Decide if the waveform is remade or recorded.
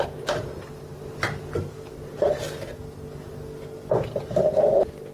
recorded